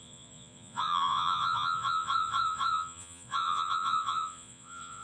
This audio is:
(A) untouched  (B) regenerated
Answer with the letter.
B